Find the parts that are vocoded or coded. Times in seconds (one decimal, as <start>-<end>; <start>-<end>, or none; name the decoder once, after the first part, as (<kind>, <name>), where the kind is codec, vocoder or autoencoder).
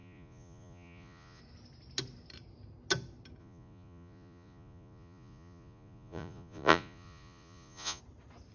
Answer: 0.0-1.4 (vocoder, Vocos); 3.4-8.0